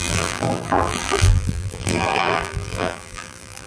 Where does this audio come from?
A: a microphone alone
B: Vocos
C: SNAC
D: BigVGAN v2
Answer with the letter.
D